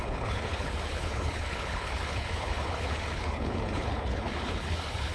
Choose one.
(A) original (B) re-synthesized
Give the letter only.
B